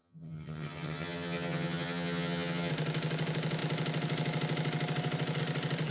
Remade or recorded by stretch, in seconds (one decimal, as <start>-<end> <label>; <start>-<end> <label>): 0.0-2.7 remade; 2.7-5.9 recorded